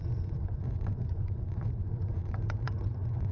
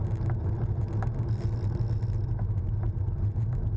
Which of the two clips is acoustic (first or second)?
second